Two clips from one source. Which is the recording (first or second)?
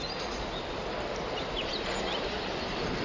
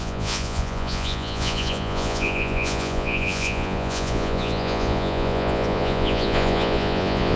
first